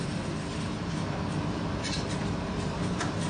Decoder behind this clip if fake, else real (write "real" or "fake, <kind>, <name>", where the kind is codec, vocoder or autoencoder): fake, vocoder, BigVGAN v2